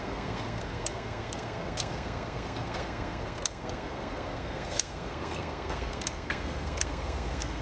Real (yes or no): no